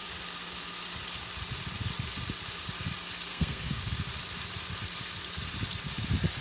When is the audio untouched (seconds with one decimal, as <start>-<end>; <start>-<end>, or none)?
0.0-3.3; 3.8-6.4